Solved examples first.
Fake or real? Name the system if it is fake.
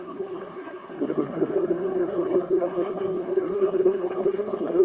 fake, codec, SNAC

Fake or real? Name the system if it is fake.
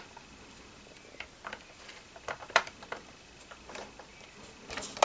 real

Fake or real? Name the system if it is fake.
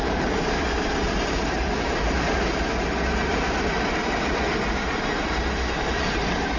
fake, vocoder, BigVGAN v2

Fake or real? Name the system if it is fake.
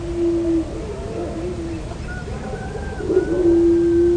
real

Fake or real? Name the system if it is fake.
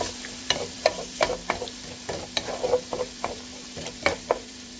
fake, vocoder, BigVGAN v2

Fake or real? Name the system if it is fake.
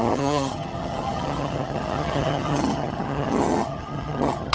fake, vocoder, HiFi-GAN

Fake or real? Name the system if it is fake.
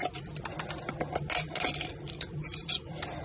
fake, vocoder, BigVGAN v2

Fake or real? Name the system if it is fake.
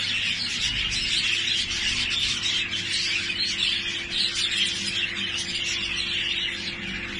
real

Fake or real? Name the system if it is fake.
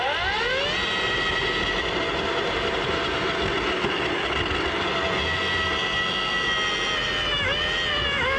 real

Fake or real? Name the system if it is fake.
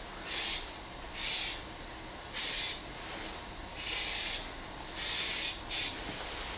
real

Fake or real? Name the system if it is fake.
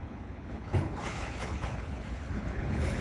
fake, codec, HILCodec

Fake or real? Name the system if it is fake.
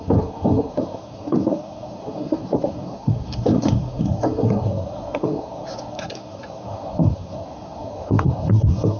fake, codec, SNAC